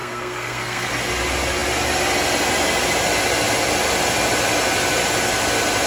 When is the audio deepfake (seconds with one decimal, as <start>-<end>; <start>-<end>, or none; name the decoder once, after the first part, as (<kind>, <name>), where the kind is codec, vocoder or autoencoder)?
0.0-0.9 (codec, SNAC)